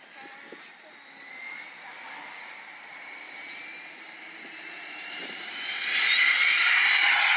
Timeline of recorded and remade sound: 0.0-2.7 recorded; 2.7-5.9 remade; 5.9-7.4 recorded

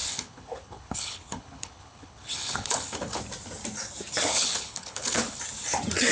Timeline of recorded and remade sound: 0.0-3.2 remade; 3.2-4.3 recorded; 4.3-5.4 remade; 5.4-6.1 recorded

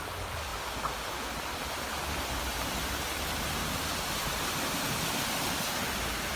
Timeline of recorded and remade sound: 0.0-0.5 recorded; 0.5-2.6 remade; 2.6-6.4 recorded

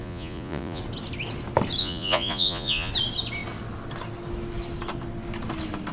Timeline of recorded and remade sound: 0.0-0.8 remade; 0.8-1.8 recorded; 1.8-2.9 remade; 2.9-5.9 recorded

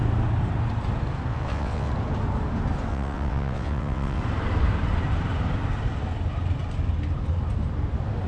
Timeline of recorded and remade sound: 0.0-1.3 recorded; 1.3-1.9 remade; 1.9-2.9 recorded; 2.9-4.2 remade; 4.2-8.3 recorded

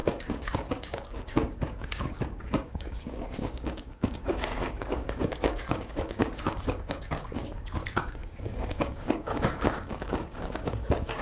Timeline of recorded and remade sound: 0.0-11.2 remade

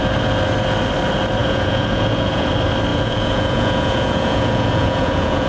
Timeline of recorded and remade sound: 0.0-1.4 recorded; 1.4-2.5 remade; 2.5-2.9 recorded; 2.9-5.5 remade

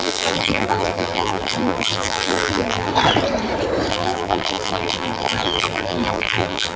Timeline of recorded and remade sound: 0.0-2.9 remade; 2.9-3.9 recorded; 3.9-6.8 remade